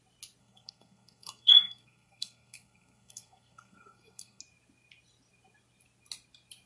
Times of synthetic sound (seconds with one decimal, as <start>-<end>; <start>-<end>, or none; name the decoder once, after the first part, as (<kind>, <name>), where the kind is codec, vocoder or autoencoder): 0.4-4.4 (codec, SNAC)